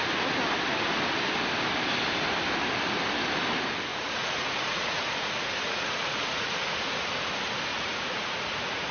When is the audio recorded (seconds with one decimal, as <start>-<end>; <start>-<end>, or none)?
0.0-3.9; 7.0-7.7